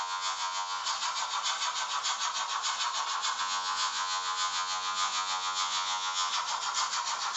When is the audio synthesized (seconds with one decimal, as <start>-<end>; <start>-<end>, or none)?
0.0-0.8; 3.4-6.3